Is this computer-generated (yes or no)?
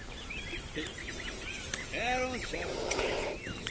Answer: no